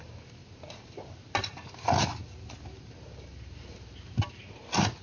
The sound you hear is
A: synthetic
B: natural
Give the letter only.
B